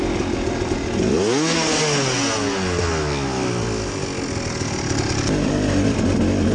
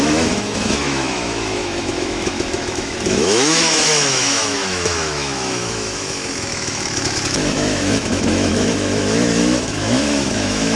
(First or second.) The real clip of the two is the first